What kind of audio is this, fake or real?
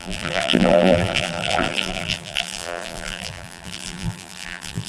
fake